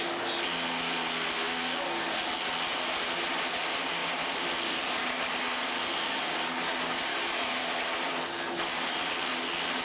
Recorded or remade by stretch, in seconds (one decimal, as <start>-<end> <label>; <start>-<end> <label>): 0.0-7.1 recorded; 7.1-7.6 remade; 7.6-9.8 recorded